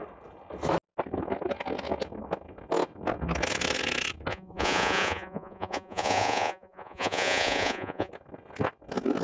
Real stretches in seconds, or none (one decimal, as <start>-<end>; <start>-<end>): 0.0-4.3; 8.1-9.2